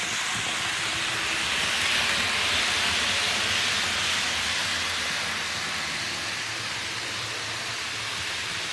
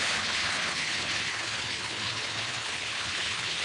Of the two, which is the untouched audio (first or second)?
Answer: first